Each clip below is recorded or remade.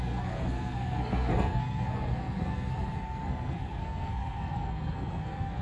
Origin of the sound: remade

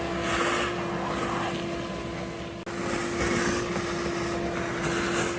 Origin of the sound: recorded